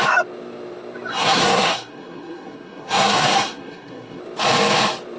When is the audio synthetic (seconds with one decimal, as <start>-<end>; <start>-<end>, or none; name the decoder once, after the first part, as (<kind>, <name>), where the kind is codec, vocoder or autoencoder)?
1.1-4.2 (codec, SNAC)